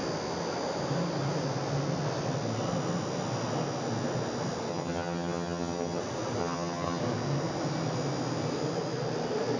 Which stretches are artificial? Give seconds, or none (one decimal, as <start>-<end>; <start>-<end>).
4.7-6.0; 6.4-7.0